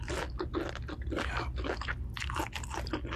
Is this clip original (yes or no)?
yes